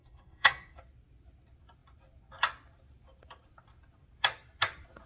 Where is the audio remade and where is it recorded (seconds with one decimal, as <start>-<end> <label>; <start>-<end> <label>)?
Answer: 0.0-0.8 remade; 0.8-5.1 recorded

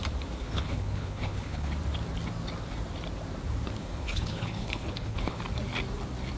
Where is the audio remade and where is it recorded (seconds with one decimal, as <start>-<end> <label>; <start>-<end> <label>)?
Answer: 0.0-0.4 recorded; 0.4-1.7 remade; 1.7-3.8 recorded; 3.8-5.4 remade; 5.4-6.4 recorded

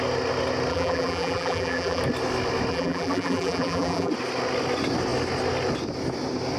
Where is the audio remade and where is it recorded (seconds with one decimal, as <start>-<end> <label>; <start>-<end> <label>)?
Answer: 0.0-0.7 recorded; 0.7-2.0 remade; 2.0-2.7 recorded; 2.7-4.1 remade; 4.1-6.6 recorded

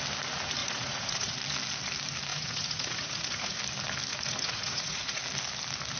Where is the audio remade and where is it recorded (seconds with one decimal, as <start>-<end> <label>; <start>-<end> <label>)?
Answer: 0.0-0.6 recorded; 0.6-1.3 remade; 1.3-2.3 recorded; 2.3-3.6 remade; 3.6-4.1 recorded; 4.1-5.2 remade; 5.2-6.0 recorded

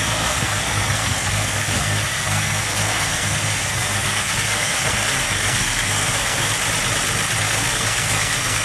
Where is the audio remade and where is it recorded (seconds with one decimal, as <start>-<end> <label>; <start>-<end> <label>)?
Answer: 0.0-6.5 remade; 6.5-7.4 recorded; 7.4-8.6 remade

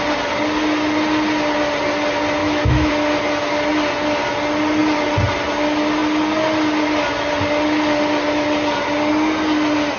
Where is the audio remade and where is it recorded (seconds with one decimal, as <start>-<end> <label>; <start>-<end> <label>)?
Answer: 0.0-2.4 recorded; 2.4-2.9 remade; 2.9-10.0 recorded

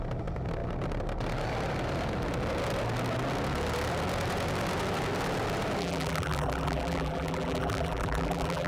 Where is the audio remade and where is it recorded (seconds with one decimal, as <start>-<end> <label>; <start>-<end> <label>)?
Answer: 0.0-5.8 recorded; 5.8-8.7 remade